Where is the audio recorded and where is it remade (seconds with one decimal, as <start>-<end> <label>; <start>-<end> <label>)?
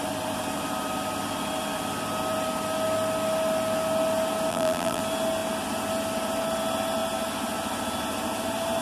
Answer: 0.0-4.5 recorded; 4.5-5.0 remade; 5.0-8.8 recorded